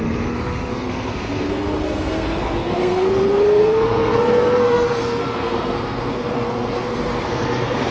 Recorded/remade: remade